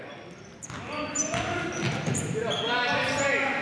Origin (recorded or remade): recorded